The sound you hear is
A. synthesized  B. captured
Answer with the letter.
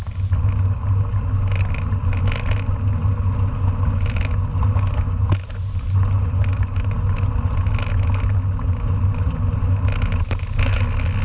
B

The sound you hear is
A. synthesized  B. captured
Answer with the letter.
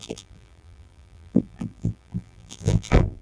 A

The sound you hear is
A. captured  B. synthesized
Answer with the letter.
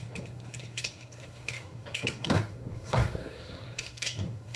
B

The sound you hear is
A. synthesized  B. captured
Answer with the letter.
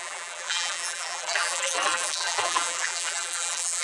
A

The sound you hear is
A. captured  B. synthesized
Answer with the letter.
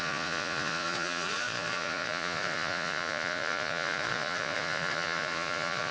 B